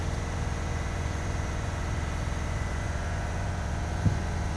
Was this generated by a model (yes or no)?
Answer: yes